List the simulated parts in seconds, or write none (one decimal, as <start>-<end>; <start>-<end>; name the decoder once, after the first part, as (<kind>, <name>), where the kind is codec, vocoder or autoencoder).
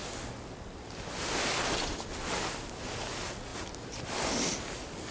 none